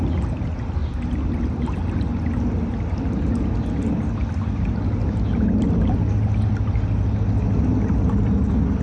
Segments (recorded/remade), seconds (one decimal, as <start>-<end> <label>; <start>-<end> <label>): 0.0-8.8 recorded